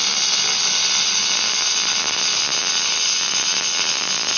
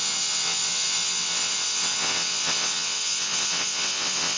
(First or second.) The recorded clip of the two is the first